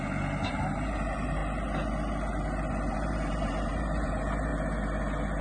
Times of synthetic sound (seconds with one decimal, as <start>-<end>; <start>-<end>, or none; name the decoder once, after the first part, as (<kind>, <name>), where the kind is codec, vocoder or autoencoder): 0.0-1.4 (vocoder, BigVGAN v2); 2.9-4.5